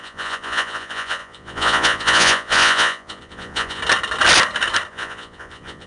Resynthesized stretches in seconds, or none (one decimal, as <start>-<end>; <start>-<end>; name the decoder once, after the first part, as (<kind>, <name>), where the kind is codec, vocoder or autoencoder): 0.0-3.8 (vocoder, Vocos); 4.9-5.9